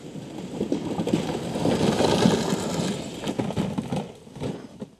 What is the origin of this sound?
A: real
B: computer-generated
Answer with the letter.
A